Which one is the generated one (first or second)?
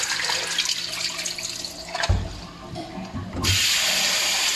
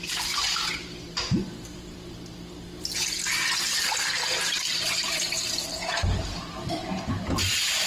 second